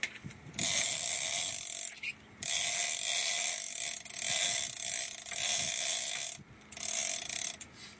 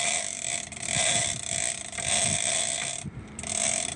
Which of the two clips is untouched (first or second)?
first